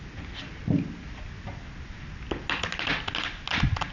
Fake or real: real